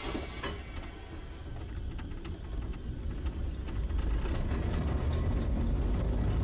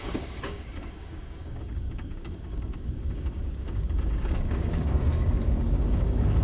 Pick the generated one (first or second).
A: second